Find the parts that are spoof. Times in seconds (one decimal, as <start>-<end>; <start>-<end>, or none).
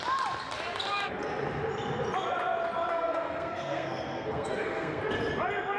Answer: 2.9-5.0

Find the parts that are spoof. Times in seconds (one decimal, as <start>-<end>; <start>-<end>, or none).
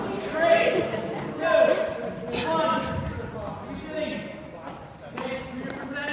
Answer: none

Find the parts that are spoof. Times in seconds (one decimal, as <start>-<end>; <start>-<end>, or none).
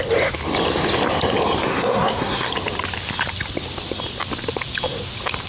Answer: 1.7-2.5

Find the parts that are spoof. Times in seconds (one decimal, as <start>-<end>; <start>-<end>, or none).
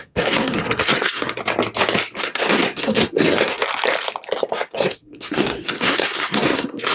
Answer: 0.0-1.4; 2.2-3.6; 4.4-6.9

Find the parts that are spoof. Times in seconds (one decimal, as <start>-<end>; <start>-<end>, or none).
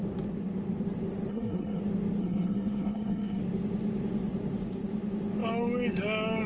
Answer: 1.3-1.8; 2.2-3.4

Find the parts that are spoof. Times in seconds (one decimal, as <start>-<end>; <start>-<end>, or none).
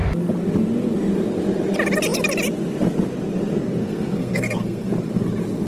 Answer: 3.8-4.9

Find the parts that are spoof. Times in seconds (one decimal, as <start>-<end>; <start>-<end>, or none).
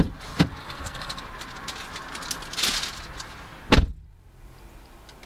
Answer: 0.6-1.2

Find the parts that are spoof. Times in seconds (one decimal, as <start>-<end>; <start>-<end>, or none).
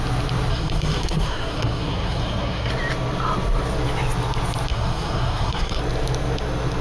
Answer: 0.5-2.7; 4.7-5.8